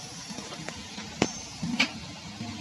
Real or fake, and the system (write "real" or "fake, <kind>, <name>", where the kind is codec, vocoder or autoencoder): real